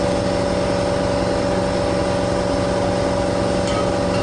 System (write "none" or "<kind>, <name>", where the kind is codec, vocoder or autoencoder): none